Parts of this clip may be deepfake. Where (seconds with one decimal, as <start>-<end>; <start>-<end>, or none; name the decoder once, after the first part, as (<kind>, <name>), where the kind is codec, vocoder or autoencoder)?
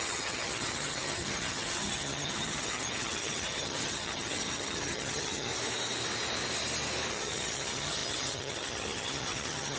0.0-5.5 (vocoder, HiFi-GAN); 7.1-9.8